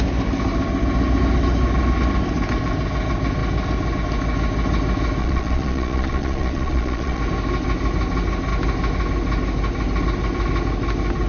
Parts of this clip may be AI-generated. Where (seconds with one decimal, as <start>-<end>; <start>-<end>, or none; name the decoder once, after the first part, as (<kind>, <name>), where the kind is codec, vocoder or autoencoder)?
5.2-7.2 (vocoder, Vocos)